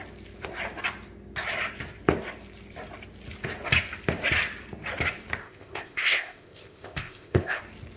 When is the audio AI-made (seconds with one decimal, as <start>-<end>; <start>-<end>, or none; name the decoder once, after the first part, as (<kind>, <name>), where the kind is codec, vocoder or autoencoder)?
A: 5.4-7.6 (codec, ZipCodec)